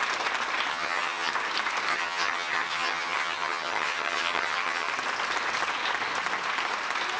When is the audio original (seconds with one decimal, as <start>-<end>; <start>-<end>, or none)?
0.0-0.7; 1.3-1.9; 4.9-7.2